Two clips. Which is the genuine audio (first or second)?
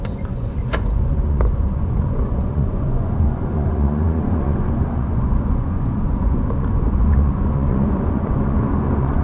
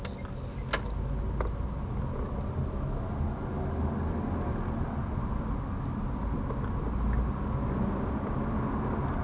second